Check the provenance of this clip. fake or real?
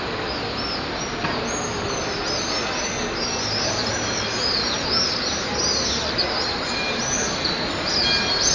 real